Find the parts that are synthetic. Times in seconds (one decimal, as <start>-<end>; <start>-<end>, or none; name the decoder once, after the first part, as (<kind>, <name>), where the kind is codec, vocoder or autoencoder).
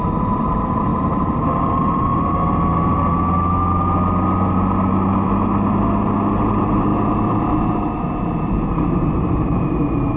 0.0-2.4 (vocoder, BigVGAN v2); 6.5-10.2